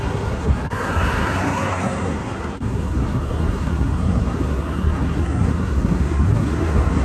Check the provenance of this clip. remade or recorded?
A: remade